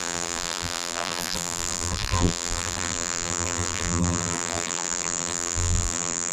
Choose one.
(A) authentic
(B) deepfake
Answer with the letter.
B